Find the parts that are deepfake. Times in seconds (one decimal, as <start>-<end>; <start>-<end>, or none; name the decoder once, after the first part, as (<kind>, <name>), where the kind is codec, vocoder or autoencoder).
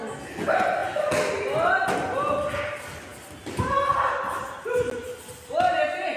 none